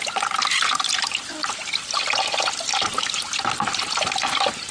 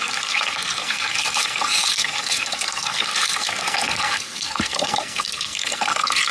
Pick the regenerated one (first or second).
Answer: second